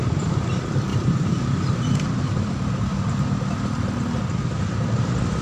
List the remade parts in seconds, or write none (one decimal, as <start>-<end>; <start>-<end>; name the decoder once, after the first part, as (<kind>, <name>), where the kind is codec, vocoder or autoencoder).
0.0-0.5 (vocoder, BigVGAN v2); 0.9-3.0